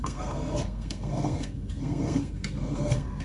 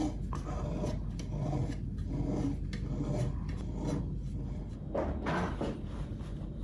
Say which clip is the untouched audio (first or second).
second